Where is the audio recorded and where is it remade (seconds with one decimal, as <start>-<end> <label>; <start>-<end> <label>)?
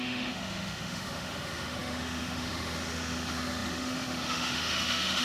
0.0-5.2 remade